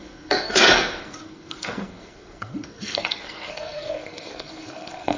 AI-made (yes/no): yes